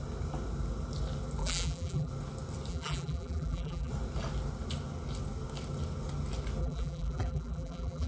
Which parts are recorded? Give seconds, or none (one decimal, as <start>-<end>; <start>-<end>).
0.0-1.4; 2.1-2.7; 3.9-6.6